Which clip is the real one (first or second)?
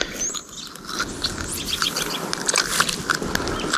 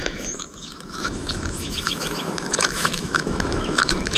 first